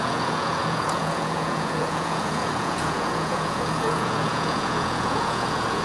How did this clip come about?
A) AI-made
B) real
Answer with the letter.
A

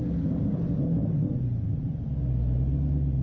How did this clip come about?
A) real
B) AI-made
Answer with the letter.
A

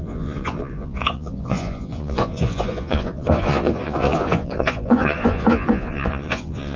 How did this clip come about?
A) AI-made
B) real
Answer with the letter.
A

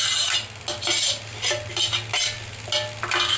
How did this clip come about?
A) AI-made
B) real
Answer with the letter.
B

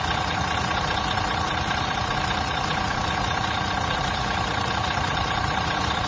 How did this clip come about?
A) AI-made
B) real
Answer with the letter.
A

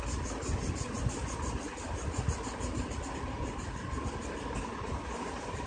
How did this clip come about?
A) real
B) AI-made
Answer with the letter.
A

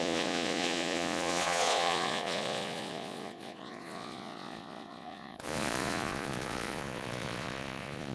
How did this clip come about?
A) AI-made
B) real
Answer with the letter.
A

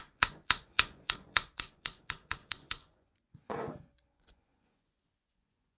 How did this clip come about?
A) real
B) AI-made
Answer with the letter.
B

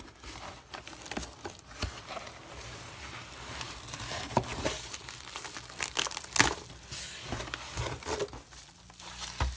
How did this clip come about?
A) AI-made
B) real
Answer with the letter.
B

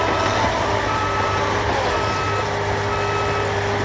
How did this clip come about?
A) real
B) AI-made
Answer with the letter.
A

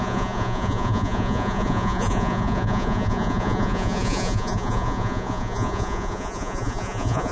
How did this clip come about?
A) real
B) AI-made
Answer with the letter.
B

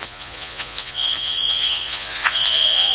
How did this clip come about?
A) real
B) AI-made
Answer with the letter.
B